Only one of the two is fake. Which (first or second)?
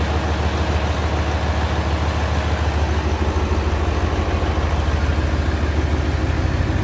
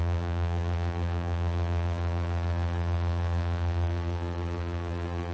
second